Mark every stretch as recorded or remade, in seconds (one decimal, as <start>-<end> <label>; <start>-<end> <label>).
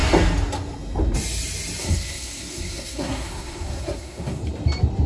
0.0-1.8 recorded; 1.8-4.4 remade; 4.4-5.1 recorded